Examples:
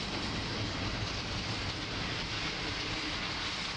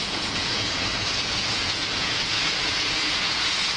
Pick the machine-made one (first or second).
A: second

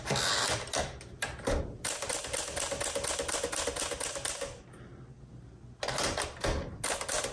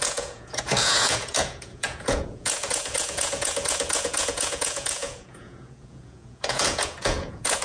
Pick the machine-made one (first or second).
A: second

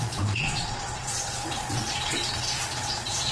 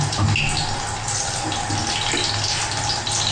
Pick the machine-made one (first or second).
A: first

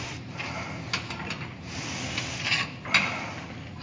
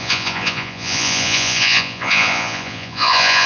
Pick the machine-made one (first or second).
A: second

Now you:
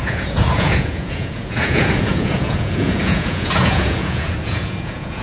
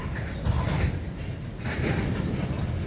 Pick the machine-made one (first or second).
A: first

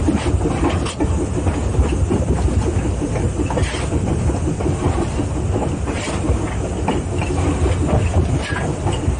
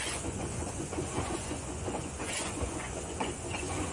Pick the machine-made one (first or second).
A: second